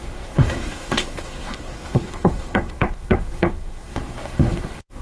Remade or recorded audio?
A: remade